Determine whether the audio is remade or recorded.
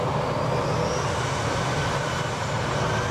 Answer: recorded